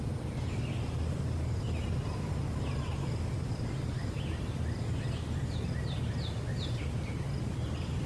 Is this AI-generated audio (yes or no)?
no